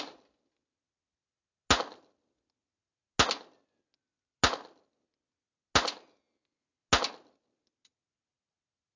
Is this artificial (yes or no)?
no